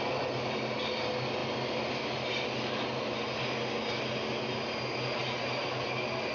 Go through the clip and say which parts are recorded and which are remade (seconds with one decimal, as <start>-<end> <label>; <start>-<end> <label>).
0.0-6.3 recorded